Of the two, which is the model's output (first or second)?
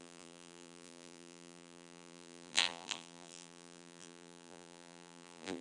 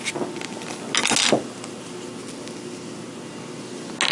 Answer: first